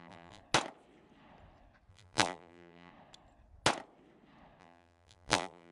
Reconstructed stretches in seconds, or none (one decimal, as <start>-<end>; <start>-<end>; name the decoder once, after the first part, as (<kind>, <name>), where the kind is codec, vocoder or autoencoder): 0.0-0.4 (vocoder, BigVGAN v2); 1.9-2.9; 4.6-5.7